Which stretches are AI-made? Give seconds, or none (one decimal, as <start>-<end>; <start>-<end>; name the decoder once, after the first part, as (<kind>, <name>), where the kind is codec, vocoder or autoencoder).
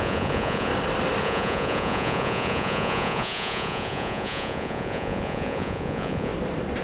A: 0.0-0.7 (vocoder, Vocos); 1.2-6.3